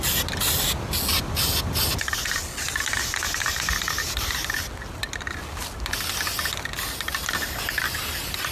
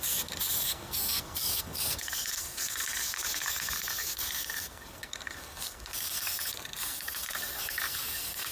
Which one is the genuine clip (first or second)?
first